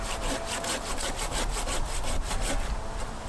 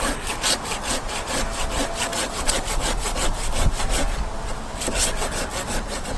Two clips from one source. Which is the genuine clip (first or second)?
first